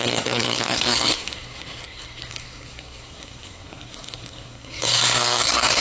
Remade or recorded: remade